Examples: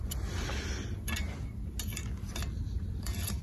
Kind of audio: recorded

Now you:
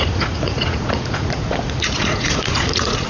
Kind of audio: remade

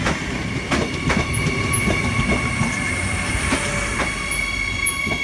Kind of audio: recorded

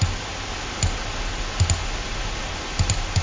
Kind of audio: recorded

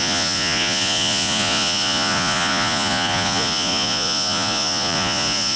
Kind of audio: remade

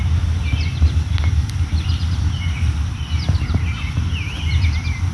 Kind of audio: recorded